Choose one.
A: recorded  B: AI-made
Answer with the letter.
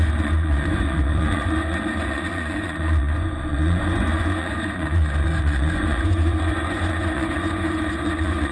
B